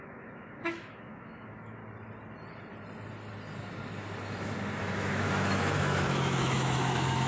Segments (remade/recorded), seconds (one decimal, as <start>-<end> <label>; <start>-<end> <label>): 0.0-1.8 remade; 1.8-4.8 recorded; 4.8-7.3 remade